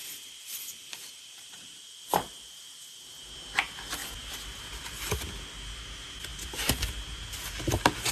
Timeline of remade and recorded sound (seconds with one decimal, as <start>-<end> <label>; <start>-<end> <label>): 0.0-3.3 remade; 3.3-8.1 recorded